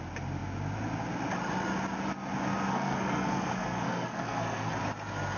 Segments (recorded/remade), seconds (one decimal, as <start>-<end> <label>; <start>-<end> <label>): 0.0-2.7 recorded; 2.7-4.7 remade; 4.7-5.4 recorded